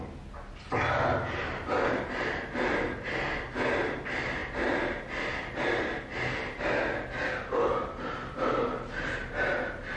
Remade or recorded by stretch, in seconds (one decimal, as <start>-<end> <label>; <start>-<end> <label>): 0.0-10.0 recorded

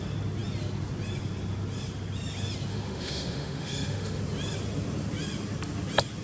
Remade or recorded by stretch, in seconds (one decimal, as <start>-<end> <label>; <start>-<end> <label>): 0.0-2.7 recorded; 2.7-4.2 remade; 4.2-6.2 recorded